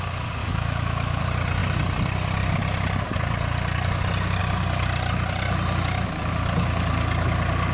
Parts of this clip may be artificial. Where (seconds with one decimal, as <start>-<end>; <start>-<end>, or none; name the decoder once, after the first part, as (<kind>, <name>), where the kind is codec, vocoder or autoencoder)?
0.4-1.2 (autoencoder, DAC-VAE)